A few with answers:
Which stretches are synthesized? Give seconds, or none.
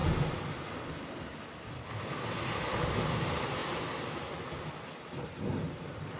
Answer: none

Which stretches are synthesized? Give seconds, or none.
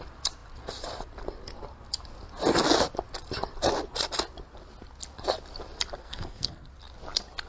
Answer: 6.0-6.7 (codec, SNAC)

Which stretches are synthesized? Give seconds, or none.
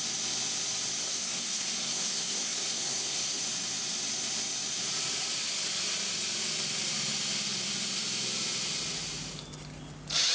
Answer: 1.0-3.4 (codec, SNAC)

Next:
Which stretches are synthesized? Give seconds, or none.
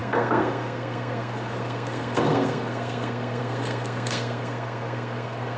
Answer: 0.0-5.6 (codec, SNAC)